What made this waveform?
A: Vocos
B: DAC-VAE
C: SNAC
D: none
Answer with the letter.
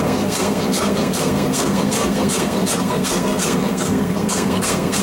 C